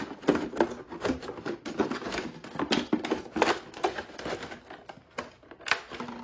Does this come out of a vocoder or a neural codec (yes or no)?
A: no